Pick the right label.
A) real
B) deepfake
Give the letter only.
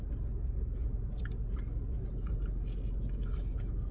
A